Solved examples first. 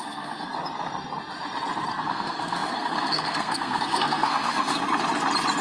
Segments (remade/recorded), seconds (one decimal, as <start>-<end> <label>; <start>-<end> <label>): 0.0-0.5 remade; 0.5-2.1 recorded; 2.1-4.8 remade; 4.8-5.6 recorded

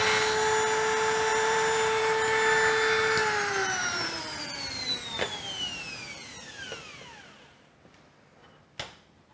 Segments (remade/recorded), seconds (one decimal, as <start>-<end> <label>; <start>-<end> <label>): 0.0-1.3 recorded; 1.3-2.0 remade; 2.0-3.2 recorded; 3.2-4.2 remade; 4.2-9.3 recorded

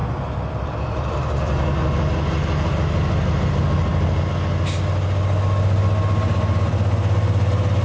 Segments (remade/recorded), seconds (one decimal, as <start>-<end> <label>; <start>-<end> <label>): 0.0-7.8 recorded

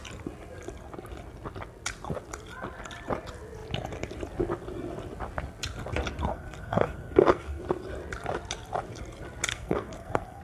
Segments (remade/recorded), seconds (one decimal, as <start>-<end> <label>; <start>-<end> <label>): 0.0-6.3 recorded; 6.3-7.6 remade; 7.6-9.5 recorded; 9.5-10.4 remade

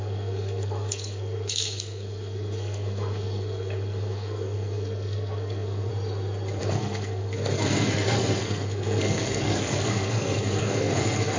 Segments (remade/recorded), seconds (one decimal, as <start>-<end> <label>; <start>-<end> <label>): 0.0-5.9 remade; 5.9-6.6 recorded; 6.6-11.4 remade

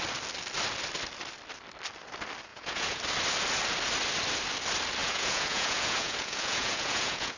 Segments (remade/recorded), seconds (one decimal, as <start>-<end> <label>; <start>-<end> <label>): 0.0-2.5 recorded; 2.5-3.0 remade; 3.0-5.0 recorded; 5.0-7.4 remade